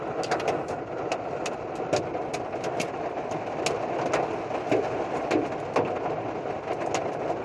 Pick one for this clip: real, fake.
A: real